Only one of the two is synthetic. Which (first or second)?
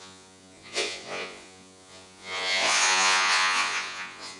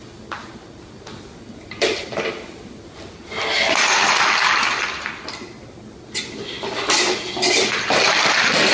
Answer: first